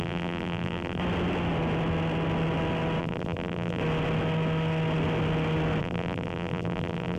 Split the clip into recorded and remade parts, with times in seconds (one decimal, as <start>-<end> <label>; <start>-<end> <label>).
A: 0.0-1.0 remade; 1.0-3.0 recorded; 3.0-3.8 remade; 3.8-5.8 recorded; 5.8-7.2 remade